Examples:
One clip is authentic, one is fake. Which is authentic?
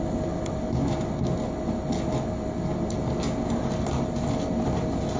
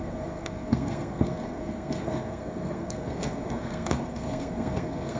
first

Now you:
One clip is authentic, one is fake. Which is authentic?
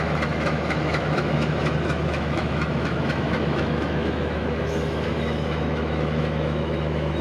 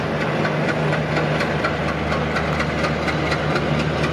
second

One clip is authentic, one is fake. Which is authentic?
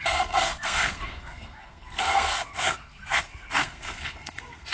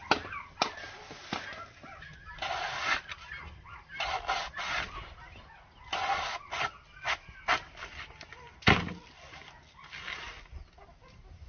second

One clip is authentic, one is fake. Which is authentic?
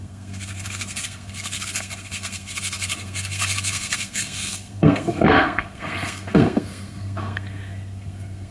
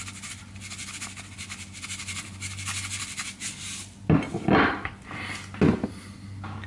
second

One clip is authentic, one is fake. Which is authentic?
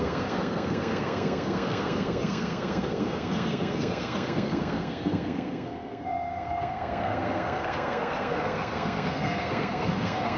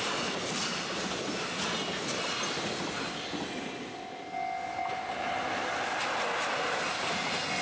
second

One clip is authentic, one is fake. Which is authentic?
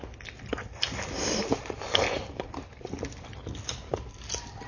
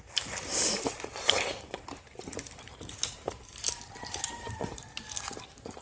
first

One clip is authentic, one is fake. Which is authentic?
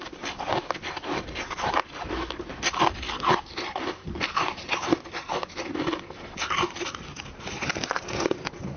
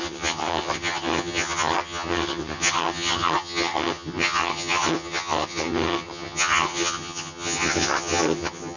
first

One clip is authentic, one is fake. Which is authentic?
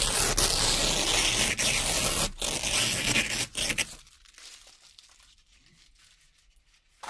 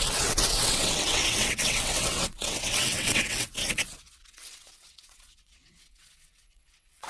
first